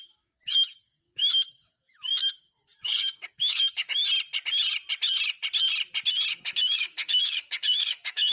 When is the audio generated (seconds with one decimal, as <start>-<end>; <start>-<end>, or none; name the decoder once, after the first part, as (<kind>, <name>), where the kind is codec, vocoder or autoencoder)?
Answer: 0.0-4.0 (codec, DAC); 6.3-8.3